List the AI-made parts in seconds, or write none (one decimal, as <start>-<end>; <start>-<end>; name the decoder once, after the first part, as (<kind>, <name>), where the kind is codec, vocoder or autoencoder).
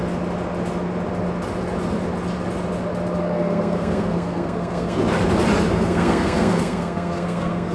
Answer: 3.2-5.0 (codec, SNAC); 5.7-7.7